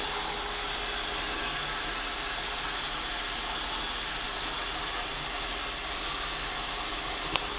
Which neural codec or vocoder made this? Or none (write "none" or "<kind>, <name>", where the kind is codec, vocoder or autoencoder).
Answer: none